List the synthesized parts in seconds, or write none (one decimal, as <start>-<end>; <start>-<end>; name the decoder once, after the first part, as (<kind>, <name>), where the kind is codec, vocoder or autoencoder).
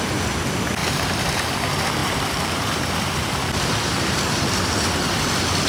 0.8-1.5 (vocoder, BigVGAN v2); 2.0-3.3